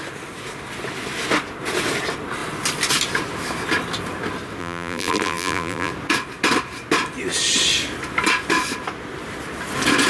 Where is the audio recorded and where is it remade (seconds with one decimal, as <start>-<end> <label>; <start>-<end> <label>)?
0.0-4.6 recorded; 4.6-5.9 remade; 5.9-10.1 recorded